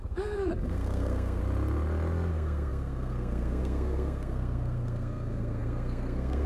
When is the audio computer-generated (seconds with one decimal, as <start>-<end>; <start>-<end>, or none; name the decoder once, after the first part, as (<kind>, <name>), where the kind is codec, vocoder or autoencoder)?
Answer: 0.0-1.4 (codec, SNAC); 2.3-6.5